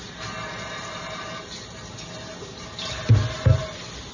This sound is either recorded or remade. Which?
recorded